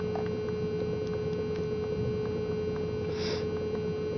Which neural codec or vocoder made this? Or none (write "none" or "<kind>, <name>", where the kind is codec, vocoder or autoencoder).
none